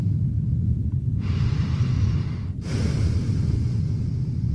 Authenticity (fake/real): real